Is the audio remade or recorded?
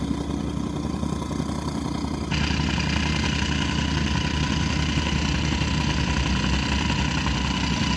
recorded